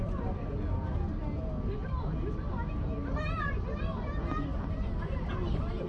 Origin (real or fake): real